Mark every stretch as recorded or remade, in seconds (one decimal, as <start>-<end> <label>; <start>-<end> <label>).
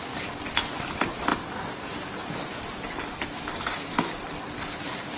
0.0-5.2 recorded